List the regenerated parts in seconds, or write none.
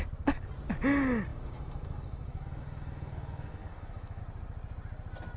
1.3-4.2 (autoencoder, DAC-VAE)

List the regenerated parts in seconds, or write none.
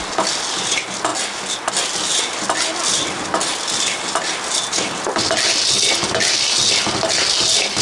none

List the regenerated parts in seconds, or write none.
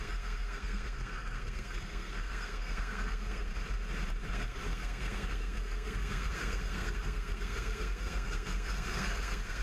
0.0-3.5 (codec, SNAC); 4.3-9.6